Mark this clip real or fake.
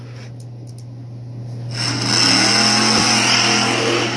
real